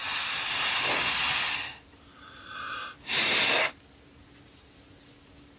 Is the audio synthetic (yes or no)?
no